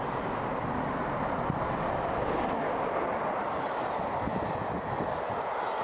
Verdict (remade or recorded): recorded